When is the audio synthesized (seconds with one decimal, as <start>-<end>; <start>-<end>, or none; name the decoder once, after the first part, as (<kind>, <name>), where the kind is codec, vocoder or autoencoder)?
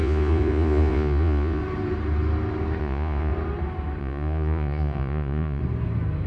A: 0.0-1.6 (vocoder, Vocos); 2.8-3.3; 4.0-5.6